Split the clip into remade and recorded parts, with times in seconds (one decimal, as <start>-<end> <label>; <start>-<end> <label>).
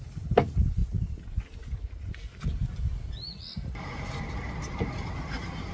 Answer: 0.0-5.7 recorded